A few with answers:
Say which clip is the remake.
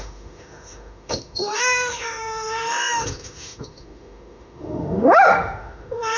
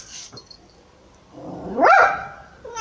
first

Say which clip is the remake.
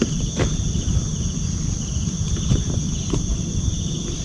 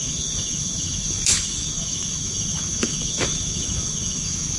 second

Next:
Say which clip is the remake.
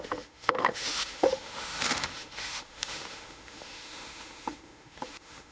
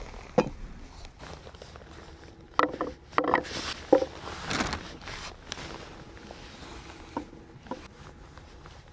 first